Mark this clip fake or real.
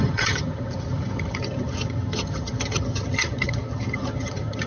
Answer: fake